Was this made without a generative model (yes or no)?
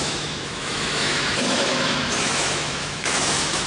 no